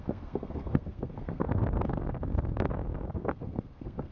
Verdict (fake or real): fake